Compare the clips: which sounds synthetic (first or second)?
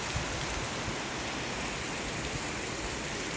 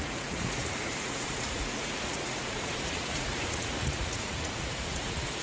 second